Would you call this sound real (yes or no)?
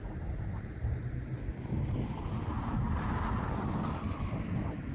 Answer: yes